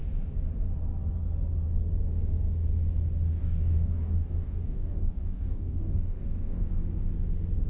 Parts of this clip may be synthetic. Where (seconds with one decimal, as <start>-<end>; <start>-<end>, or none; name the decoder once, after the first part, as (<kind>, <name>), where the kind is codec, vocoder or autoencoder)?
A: 3.4-6.7 (codec, DAC)